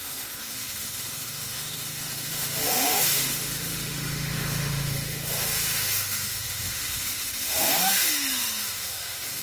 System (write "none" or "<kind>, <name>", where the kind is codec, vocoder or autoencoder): autoencoder, DAC-VAE